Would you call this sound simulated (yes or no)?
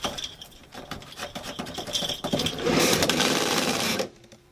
yes